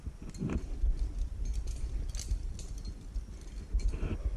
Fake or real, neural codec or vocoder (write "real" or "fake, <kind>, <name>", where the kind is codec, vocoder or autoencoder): real